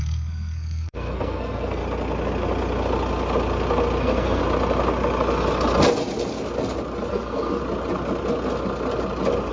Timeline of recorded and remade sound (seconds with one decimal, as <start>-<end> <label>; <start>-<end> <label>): 0.0-1.8 remade; 1.8-4.0 recorded; 4.0-4.4 remade; 4.4-7.1 recorded; 7.1-7.6 remade; 7.6-9.5 recorded